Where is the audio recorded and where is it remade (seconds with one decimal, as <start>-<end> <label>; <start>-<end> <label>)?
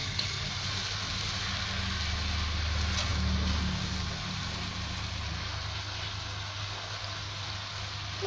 0.0-0.5 remade; 0.5-8.3 recorded